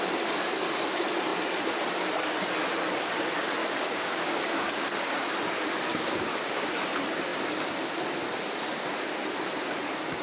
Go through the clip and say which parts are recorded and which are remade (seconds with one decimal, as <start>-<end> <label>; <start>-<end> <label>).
0.0-3.6 recorded; 3.6-5.3 remade; 5.3-5.9 recorded; 5.9-6.7 remade; 6.7-10.2 recorded